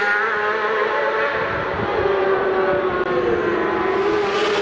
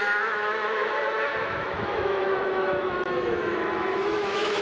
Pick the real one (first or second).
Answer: first